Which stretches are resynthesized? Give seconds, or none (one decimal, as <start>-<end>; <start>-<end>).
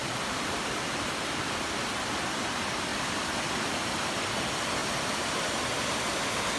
2.9-3.7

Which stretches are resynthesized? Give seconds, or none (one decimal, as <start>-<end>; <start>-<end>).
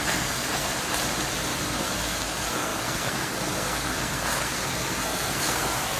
0.0-0.7; 1.6-6.0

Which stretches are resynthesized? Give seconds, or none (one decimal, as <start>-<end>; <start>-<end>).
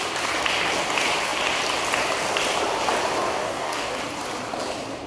3.3-3.9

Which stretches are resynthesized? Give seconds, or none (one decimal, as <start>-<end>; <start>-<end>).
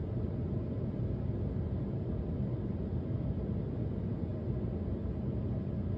none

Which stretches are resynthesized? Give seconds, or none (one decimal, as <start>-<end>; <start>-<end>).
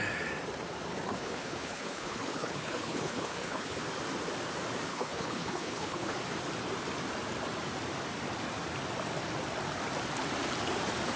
0.9-3.8; 4.9-6.2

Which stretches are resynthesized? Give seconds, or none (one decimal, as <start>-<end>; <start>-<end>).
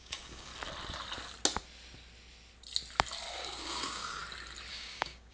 0.0-0.5; 3.3-4.2; 4.7-5.3